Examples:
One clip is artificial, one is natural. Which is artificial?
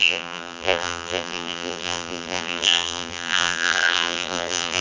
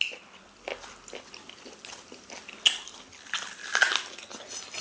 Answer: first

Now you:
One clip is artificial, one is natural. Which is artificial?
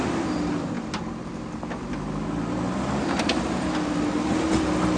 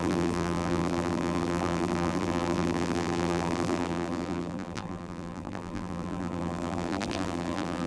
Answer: second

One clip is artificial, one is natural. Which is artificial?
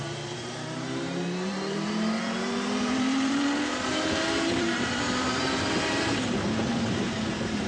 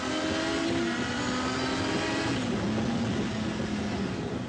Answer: first